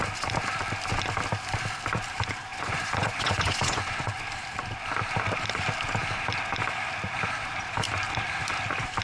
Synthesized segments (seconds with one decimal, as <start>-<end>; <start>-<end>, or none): 2.5-4.2